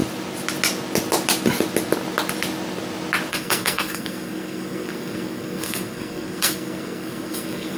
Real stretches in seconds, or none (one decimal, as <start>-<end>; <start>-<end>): 0.0-3.3